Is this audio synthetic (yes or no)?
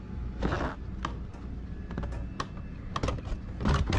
no